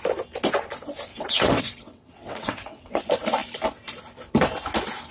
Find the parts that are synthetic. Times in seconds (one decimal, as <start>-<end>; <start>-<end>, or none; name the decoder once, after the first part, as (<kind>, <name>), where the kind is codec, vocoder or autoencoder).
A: 1.1-3.0 (vocoder, WaveNeXt)